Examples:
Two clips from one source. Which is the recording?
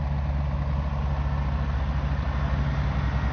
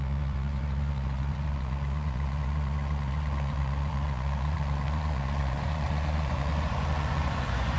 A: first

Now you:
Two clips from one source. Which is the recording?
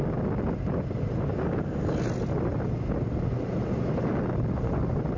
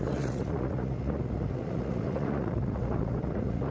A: first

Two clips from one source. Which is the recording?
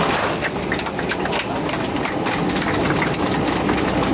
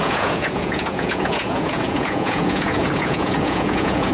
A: first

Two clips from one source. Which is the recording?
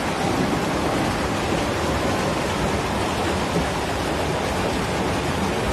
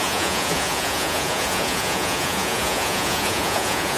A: first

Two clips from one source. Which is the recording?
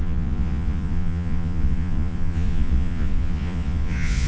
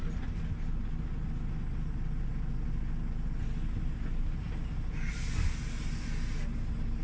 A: second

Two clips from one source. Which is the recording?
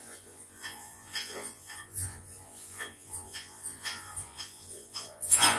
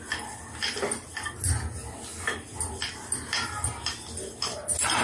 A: second